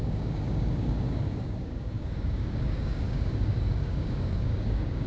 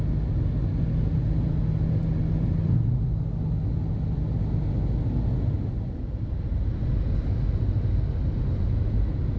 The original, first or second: second